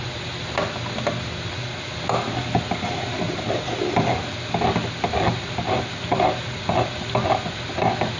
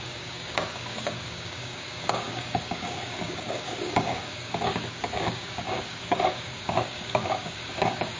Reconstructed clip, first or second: second